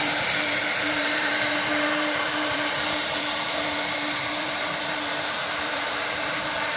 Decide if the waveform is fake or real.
fake